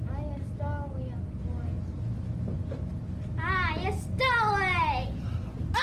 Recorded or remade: recorded